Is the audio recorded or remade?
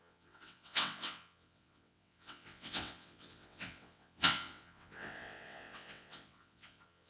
remade